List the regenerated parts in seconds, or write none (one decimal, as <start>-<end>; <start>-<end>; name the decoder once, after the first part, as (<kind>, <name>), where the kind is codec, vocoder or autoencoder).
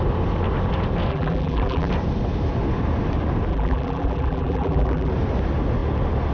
1.1-1.9 (vocoder, BigVGAN v2); 3.5-5.1